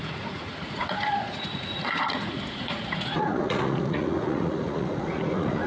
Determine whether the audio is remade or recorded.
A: remade